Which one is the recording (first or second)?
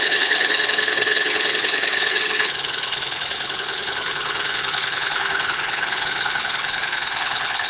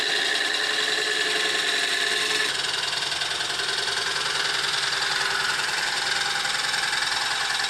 second